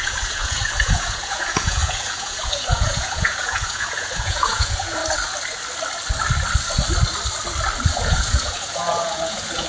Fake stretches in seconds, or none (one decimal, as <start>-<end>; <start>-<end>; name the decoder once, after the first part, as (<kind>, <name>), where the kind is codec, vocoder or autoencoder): 0.0-5.0 (vocoder, Vocos); 7.9-9.7